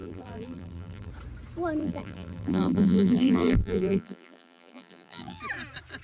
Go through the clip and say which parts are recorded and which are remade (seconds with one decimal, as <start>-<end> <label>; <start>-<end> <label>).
0.0-1.1 remade; 1.1-1.8 recorded; 1.8-5.4 remade; 5.4-6.0 recorded